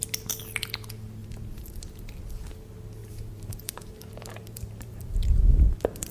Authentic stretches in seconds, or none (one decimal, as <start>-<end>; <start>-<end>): 0.0-1.2; 1.8-3.0; 5.4-6.1